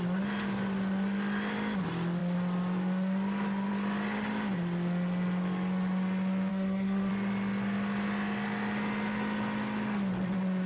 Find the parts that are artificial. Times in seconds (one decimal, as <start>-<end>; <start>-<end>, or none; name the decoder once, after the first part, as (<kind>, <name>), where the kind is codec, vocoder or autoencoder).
6.5-7.1 (codec, SNAC)